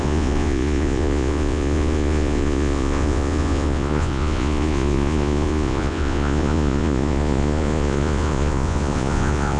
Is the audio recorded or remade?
remade